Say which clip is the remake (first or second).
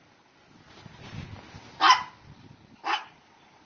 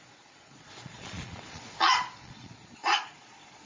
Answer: second